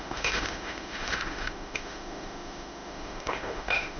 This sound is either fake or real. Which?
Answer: fake